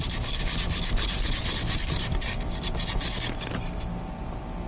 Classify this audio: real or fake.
real